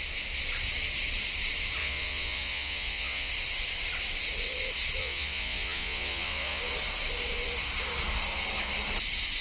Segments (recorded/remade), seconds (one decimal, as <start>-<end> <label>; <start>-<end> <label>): 0.0-1.8 recorded; 1.8-3.3 remade; 3.3-5.0 recorded; 5.0-6.6 remade; 6.6-9.4 recorded